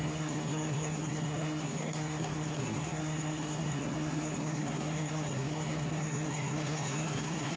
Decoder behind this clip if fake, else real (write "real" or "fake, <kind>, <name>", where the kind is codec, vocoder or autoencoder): fake, codec, SNAC